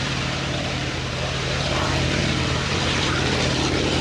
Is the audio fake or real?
fake